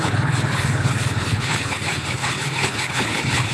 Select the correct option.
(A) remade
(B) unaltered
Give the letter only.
A